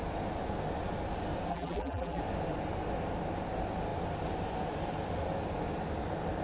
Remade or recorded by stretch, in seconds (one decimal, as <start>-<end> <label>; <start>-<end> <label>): 0.0-1.5 recorded; 1.5-2.2 remade; 2.2-6.4 recorded